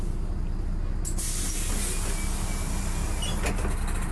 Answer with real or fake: real